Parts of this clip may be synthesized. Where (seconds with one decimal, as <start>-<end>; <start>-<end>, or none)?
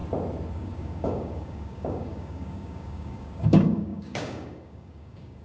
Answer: 0.5-5.4